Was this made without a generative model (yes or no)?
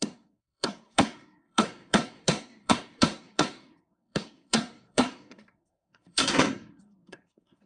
no